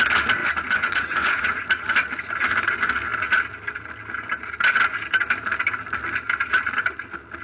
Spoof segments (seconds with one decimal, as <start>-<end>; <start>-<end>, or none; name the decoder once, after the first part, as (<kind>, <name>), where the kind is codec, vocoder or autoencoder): 0.4-1.6 (vocoder, Vocos)